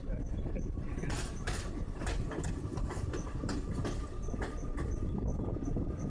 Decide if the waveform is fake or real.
fake